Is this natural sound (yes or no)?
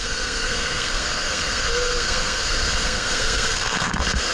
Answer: no